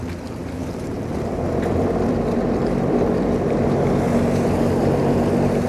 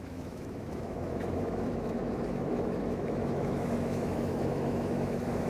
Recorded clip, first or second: first